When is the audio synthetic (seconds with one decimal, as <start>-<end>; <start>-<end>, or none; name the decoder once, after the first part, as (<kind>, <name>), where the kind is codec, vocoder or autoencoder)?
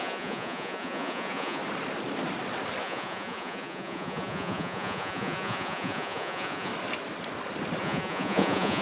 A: 0.0-1.6 (vocoder, Vocos); 2.8-6.7; 7.8-8.8